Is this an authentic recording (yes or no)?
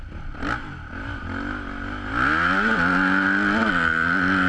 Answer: yes